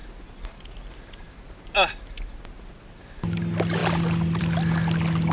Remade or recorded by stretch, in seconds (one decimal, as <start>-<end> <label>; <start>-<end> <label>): 0.0-5.3 recorded